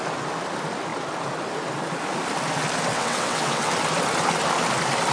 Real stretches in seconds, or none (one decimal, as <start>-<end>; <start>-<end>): 0.0-2.9; 3.7-5.1